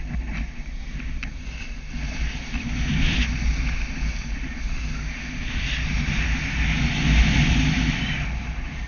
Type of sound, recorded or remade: recorded